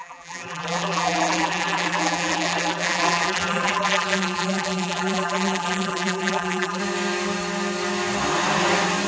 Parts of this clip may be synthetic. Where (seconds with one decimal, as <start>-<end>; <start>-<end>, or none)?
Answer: 0.0-6.8